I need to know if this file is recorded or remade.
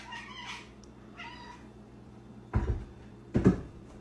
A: remade